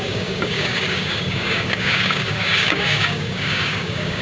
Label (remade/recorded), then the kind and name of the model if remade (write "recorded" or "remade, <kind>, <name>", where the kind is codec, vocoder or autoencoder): remade, codec, DAC